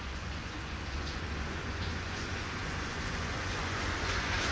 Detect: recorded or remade remade